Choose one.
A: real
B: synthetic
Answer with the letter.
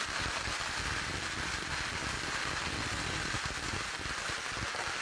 A